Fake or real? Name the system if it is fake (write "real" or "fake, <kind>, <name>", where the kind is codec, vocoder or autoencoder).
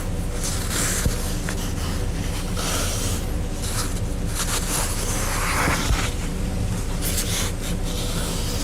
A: real